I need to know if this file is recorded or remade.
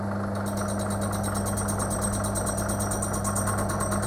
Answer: recorded